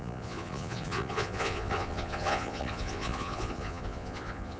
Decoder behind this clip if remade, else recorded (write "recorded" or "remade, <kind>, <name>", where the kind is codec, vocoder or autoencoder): remade, vocoder, Vocos